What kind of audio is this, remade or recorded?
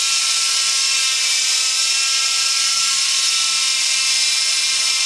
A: recorded